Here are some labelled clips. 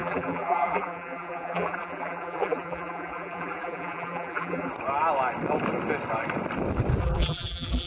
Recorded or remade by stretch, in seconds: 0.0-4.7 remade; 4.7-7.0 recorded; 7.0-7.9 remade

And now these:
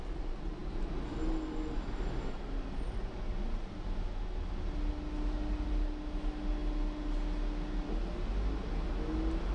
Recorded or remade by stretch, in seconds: 0.0-9.5 recorded

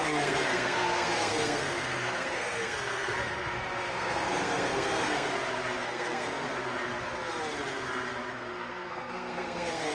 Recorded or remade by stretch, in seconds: 0.0-5.3 remade; 5.3-5.8 recorded; 5.8-6.6 remade; 6.6-8.3 recorded; 8.3-9.9 remade

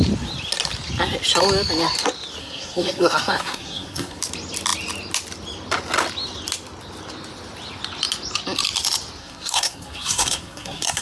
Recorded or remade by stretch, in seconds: 0.0-2.4 recorded; 2.4-4.2 remade; 4.2-9.2 recorded; 9.2-11.0 remade

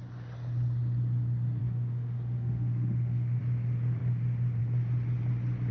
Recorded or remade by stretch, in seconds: 0.0-1.6 recorded; 1.6-3.4 remade; 3.4-5.7 recorded

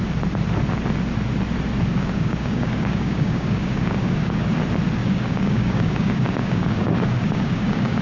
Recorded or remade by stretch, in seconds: 0.0-1.9 recorded; 1.9-4.5 remade; 4.5-5.0 recorded; 5.0-8.0 remade